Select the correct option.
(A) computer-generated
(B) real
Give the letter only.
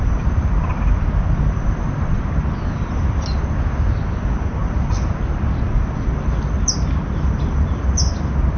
B